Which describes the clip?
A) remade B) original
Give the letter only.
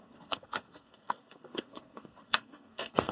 A